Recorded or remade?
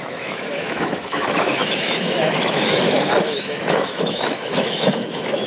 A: remade